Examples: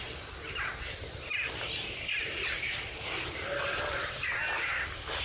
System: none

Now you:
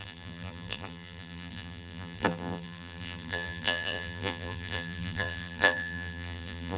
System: vocoder, BigVGAN v2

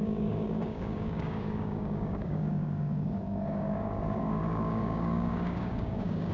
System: codec, DAC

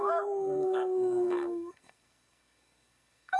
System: codec, SNAC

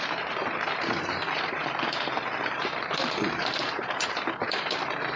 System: vocoder, BigVGAN v2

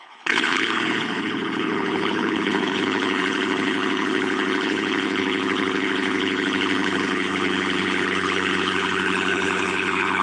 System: codec, HILCodec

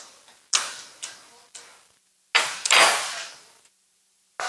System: none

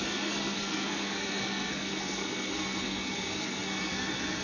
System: codec, SNAC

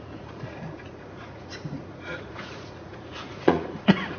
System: vocoder, Vocos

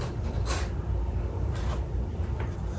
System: none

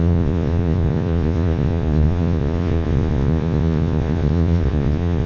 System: vocoder, Vocos